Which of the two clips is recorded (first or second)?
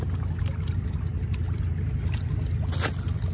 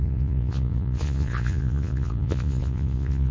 first